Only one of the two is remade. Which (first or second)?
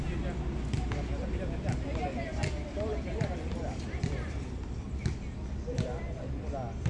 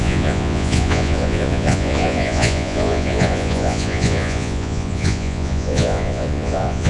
second